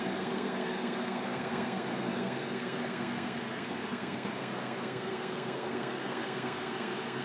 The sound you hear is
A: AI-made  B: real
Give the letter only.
A